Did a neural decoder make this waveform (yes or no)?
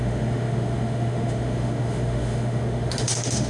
yes